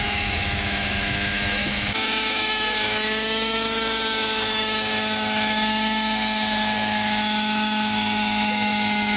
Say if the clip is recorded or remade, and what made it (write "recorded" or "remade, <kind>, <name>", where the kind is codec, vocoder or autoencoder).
remade, autoencoder, DAC-VAE